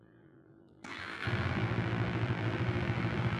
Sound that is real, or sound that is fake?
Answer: fake